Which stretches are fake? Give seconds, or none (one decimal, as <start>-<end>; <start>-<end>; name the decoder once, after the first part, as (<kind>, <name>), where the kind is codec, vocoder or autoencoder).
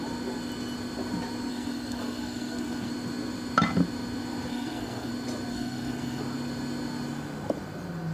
1.5-2.9 (codec, SNAC); 4.5-5.1; 5.5-6.2